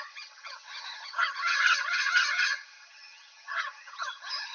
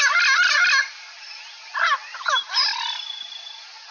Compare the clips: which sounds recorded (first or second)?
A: second